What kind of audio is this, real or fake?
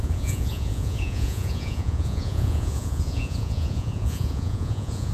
fake